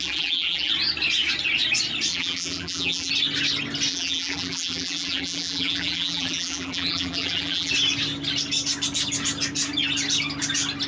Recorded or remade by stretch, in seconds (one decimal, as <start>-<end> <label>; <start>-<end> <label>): 0.0-0.7 remade; 0.7-2.1 recorded; 2.1-3.1 remade; 3.1-3.9 recorded; 3.9-7.7 remade; 7.7-10.9 recorded